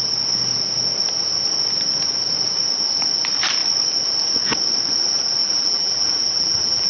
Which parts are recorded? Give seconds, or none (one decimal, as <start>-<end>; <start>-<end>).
0.0-5.4